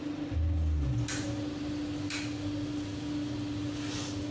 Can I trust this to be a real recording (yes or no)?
yes